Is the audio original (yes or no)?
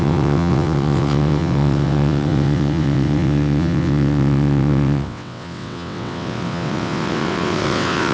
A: no